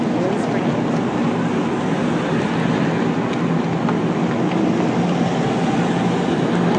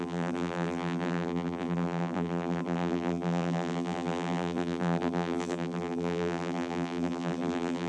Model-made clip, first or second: second